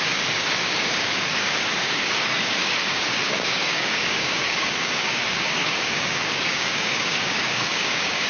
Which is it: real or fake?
fake